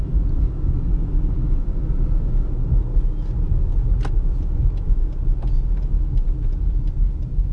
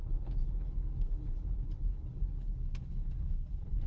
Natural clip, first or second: first